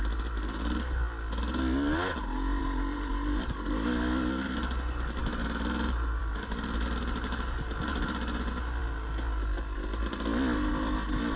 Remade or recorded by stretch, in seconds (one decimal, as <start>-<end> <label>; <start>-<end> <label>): 0.0-11.4 recorded